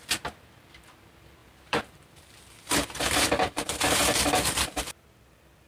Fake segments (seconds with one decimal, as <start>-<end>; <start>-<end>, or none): 1.4-4.8